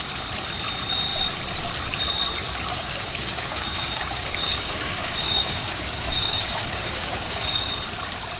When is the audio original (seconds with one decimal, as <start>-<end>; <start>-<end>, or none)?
0.0-2.7; 7.7-8.4